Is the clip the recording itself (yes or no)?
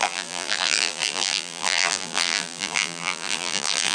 no